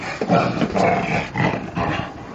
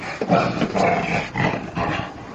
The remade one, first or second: second